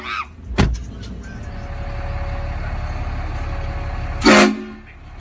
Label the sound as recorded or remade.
recorded